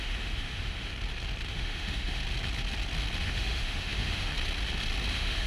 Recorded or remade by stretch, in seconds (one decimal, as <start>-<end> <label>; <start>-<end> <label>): 0.0-0.9 remade; 0.9-1.5 recorded; 1.5-2.2 remade; 2.2-3.2 recorded; 3.2-4.3 remade; 4.3-5.1 recorded; 5.1-5.5 remade